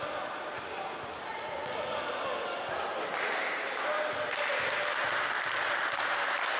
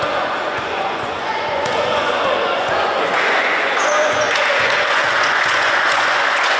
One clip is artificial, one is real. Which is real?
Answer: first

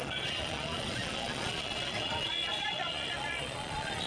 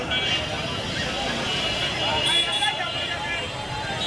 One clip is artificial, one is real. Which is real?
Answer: second